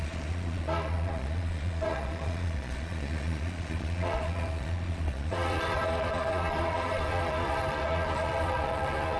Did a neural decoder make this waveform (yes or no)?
yes